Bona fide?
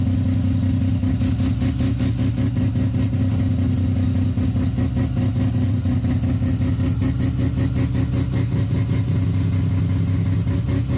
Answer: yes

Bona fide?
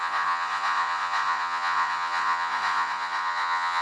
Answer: no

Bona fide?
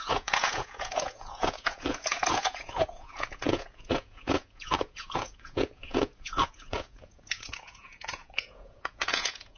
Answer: no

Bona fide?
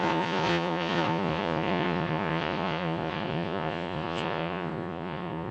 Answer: no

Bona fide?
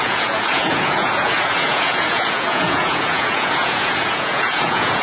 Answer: no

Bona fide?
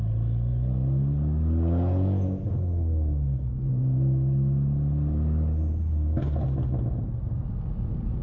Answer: yes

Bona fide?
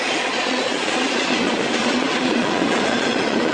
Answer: no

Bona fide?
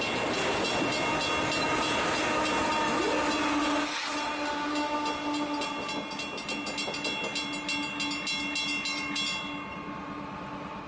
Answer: yes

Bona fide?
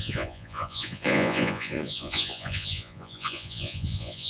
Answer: no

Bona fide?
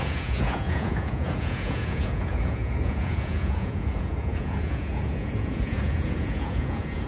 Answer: no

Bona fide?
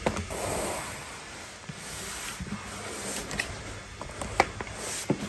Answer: yes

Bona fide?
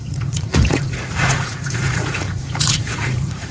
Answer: no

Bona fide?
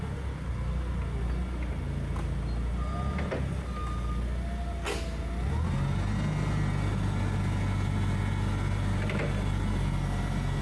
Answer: yes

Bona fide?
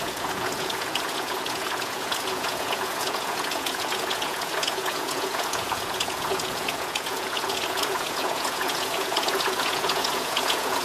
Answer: no